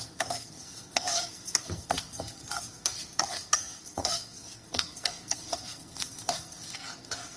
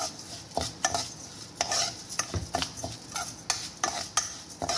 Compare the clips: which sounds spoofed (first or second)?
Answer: first